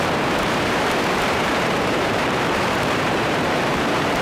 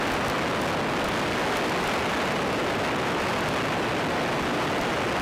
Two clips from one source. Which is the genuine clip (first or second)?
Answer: second